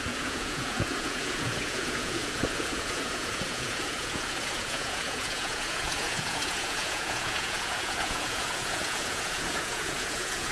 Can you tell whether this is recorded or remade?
remade